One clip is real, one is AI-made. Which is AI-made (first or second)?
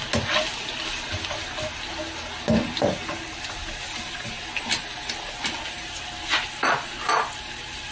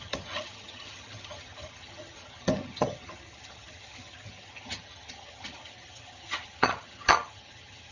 second